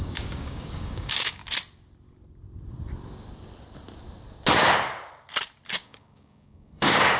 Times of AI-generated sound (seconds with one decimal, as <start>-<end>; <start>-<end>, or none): 0.0-1.4; 5.7-7.2